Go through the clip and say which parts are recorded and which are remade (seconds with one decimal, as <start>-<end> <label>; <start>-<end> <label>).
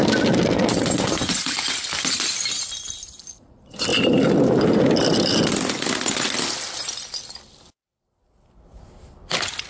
0.0-9.7 recorded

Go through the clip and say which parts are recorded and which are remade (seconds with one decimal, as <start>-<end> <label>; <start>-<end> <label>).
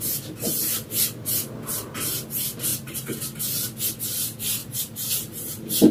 0.0-2.7 recorded; 2.7-3.2 remade; 3.2-4.6 recorded; 4.6-5.1 remade; 5.1-5.9 recorded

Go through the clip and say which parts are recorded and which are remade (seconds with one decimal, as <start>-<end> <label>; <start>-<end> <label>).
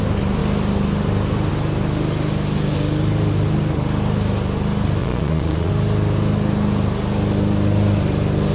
0.0-5.0 recorded; 5.0-5.7 remade; 5.7-8.5 recorded